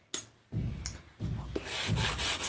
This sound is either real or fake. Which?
real